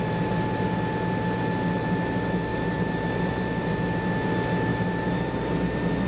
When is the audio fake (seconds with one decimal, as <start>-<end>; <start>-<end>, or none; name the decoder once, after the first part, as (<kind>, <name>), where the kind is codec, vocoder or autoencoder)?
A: 2.5-3.1 (vocoder, BigVGAN v2); 4.7-5.5